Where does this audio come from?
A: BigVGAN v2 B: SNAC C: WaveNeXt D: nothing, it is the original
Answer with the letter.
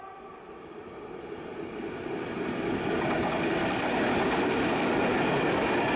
D